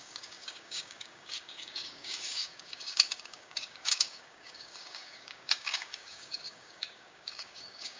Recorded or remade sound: remade